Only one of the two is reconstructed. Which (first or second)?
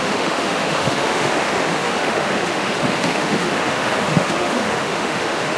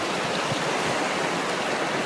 first